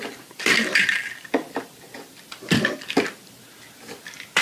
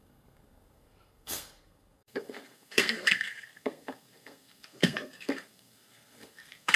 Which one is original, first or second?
first